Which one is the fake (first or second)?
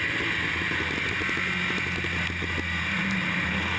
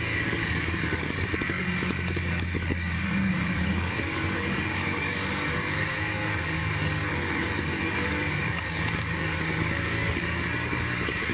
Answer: second